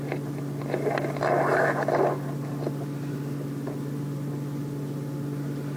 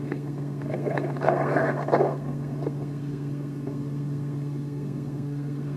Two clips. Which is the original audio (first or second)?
first